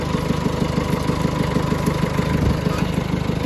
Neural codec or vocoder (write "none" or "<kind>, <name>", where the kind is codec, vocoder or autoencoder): none